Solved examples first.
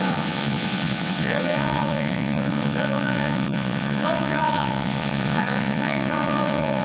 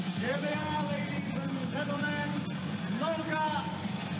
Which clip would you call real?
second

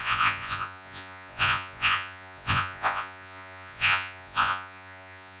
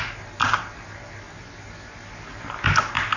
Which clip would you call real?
second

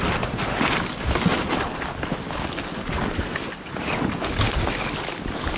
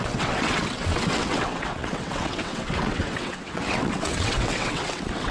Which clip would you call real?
first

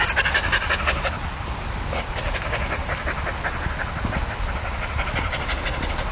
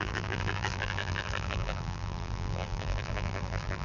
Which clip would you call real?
first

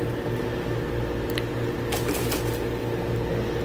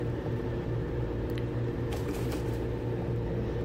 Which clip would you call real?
first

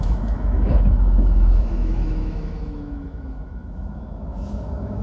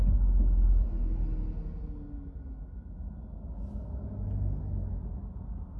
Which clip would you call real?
second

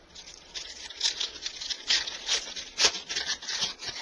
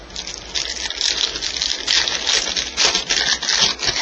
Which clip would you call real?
second